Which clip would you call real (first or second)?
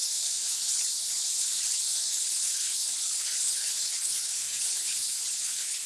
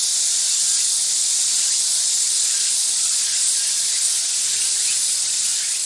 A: second